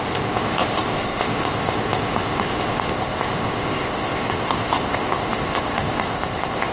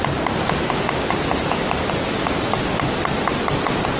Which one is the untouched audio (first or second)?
second